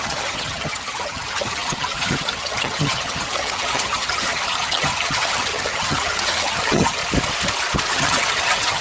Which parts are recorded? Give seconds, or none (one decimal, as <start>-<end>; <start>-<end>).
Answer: 7.0-7.9